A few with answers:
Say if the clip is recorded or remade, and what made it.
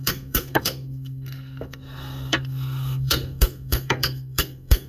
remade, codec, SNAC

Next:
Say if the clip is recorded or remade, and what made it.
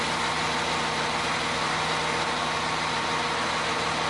recorded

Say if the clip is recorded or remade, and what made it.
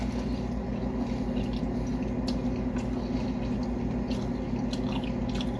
recorded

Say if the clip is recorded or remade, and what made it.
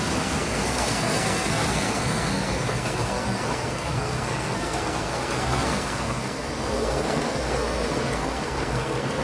remade, codec, SNAC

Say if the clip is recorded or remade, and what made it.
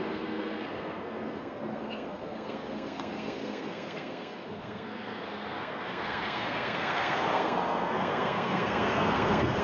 remade, codec, SNAC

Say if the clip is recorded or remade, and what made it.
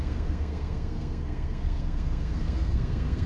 remade, codec, SNAC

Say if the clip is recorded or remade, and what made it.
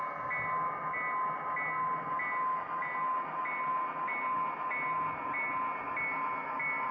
recorded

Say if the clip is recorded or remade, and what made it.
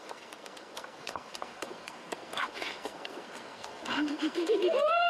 remade, codec, SNAC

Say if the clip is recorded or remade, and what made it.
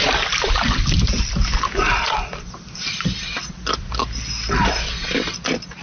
recorded